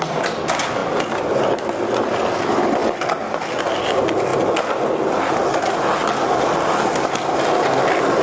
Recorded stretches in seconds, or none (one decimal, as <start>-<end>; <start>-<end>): 0.0-8.2